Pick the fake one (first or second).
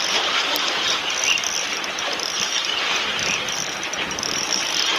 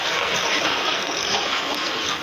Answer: second